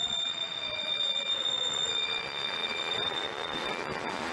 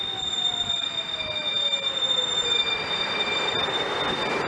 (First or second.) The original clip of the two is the second